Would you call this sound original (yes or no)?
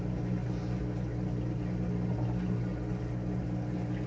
yes